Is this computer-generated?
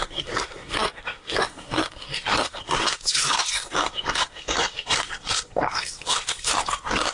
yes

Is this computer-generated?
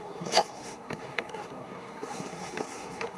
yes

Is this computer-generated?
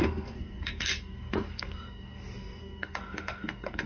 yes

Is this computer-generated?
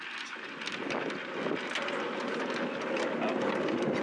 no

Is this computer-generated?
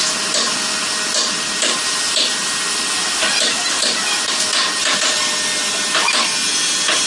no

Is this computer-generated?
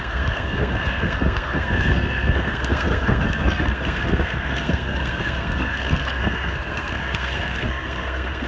yes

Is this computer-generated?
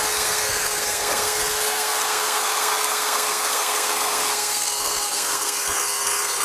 yes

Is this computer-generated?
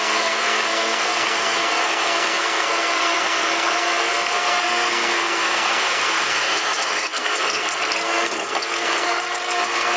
yes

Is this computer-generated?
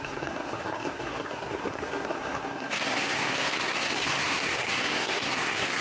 yes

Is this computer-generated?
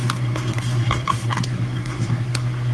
yes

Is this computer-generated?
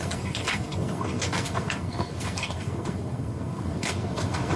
yes